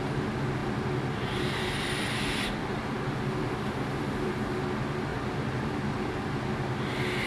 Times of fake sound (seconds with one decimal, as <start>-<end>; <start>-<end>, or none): 0.6-4.4; 5.1-5.7